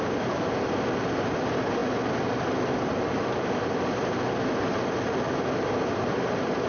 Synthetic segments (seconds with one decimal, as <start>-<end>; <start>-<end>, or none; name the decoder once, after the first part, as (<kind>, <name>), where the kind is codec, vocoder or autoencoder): none

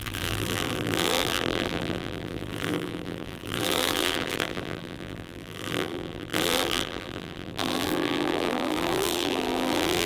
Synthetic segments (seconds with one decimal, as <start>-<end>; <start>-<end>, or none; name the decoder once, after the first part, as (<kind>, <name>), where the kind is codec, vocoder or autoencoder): 0.0-10.1 (vocoder, BigVGAN v2)